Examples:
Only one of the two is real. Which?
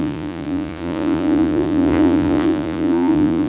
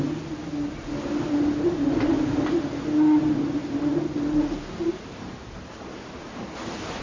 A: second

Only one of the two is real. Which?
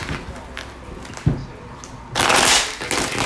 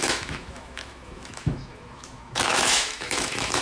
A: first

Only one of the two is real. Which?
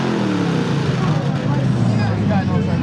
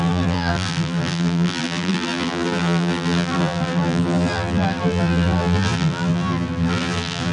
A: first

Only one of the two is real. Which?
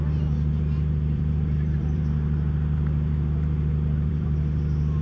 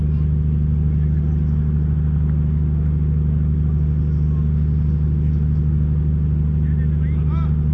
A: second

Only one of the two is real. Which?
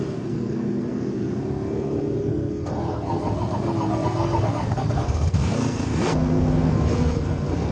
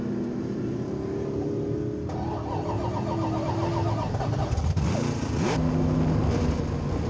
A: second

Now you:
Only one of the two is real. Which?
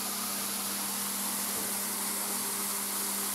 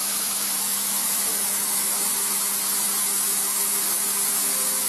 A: first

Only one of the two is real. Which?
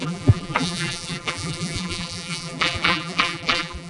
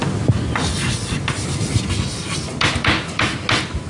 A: second